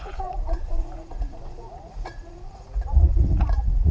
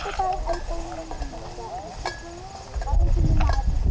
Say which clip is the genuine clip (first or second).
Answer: second